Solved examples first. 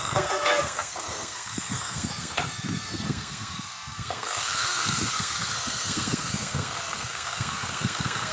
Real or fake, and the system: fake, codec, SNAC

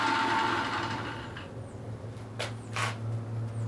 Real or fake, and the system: real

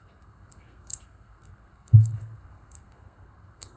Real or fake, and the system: fake, codec, SNAC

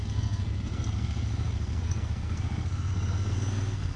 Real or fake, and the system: fake, codec, SNAC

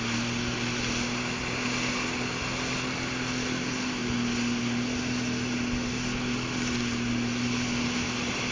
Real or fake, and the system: real